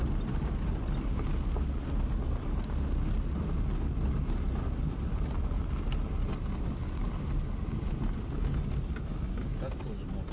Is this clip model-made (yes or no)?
no